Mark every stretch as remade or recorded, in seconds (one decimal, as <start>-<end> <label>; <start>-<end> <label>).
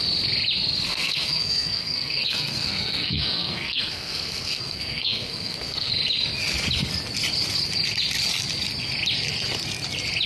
0.0-0.9 recorded; 0.9-5.9 remade; 5.9-10.3 recorded